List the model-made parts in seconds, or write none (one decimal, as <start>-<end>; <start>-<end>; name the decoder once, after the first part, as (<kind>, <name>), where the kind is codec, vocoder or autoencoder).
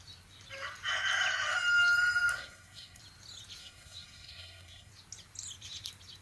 2.3-3.0 (codec, SNAC); 3.6-4.9